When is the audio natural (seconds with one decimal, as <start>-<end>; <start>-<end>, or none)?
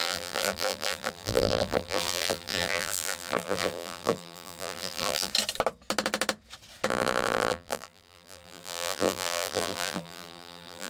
5.3-6.9